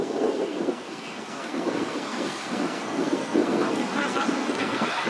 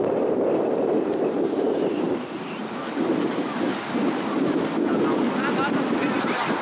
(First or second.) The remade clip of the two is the first